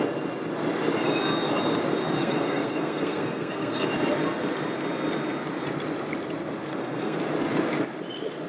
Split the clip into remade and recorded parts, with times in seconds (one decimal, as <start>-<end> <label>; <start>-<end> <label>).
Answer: 0.0-2.2 recorded; 2.2-3.9 remade; 3.9-6.7 recorded; 6.7-7.2 remade; 7.2-8.5 recorded